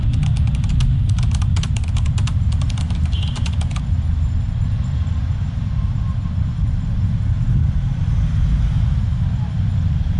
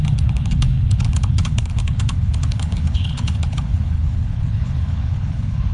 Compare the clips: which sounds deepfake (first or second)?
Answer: second